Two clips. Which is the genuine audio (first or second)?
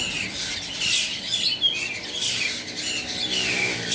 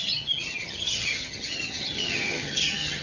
first